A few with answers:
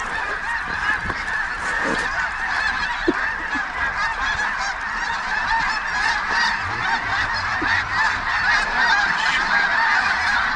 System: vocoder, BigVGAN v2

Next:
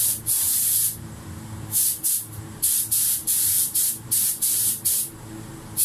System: vocoder, BigVGAN v2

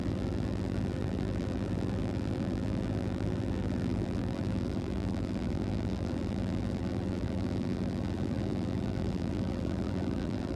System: vocoder, BigVGAN v2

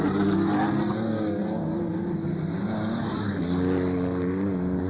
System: none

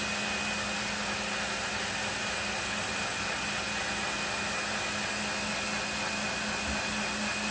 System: none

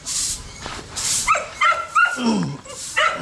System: vocoder, BigVGAN v2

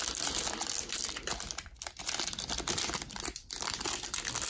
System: vocoder, BigVGAN v2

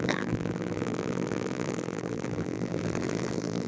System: vocoder, BigVGAN v2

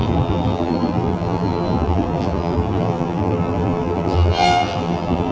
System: vocoder, BigVGAN v2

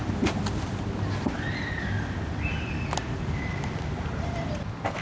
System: none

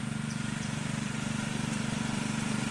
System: vocoder, BigVGAN v2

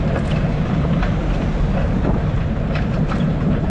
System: vocoder, BigVGAN v2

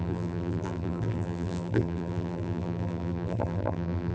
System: vocoder, BigVGAN v2